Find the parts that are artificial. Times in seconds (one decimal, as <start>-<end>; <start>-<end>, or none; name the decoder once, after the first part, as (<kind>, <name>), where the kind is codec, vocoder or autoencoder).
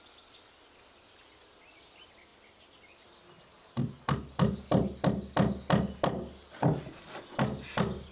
none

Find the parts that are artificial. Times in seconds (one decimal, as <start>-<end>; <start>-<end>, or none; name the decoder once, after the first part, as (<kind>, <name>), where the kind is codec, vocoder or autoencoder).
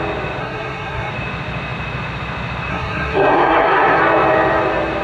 0.4-1.1 (codec, SNAC); 2.7-4.0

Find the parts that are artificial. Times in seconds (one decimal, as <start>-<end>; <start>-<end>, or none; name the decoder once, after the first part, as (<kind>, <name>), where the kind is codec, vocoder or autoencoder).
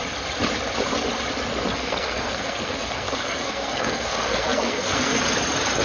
1.7-5.2 (codec, SNAC)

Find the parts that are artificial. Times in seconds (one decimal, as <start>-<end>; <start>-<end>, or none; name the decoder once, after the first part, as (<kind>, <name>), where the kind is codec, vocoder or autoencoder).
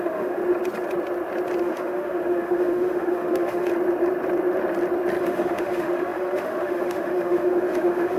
0.0-0.4 (autoencoder, DAC-VAE); 1.6-3.7; 5.2-8.2